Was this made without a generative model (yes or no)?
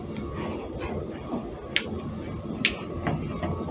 yes